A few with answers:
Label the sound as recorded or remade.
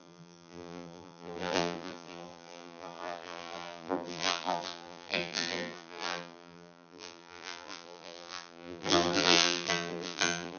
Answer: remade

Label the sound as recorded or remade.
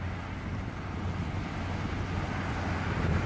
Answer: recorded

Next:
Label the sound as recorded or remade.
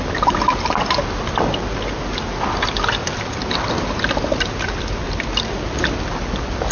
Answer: recorded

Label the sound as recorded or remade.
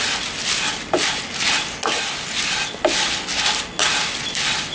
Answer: recorded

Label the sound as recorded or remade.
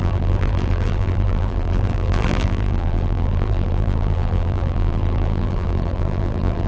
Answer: remade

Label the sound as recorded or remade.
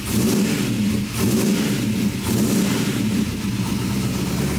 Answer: recorded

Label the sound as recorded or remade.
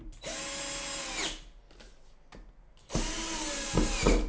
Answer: recorded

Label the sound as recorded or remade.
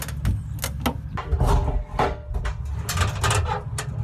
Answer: recorded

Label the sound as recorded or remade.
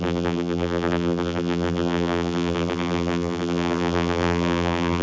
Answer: remade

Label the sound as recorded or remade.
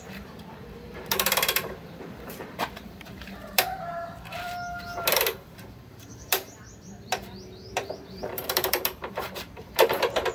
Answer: remade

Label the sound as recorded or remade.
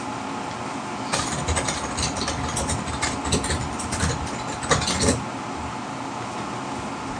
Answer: recorded